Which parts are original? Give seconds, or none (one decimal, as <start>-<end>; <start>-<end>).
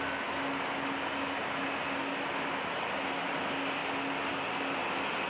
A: 0.0-5.3